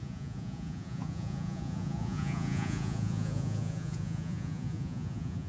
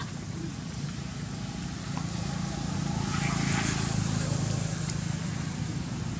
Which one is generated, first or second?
first